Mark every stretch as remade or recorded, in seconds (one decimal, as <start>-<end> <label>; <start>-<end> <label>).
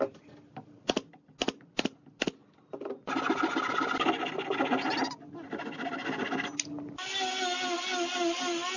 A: 0.0-8.8 recorded